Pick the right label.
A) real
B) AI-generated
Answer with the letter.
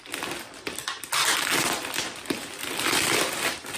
A